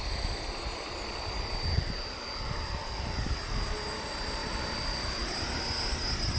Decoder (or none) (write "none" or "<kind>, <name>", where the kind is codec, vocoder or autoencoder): vocoder, BigVGAN v2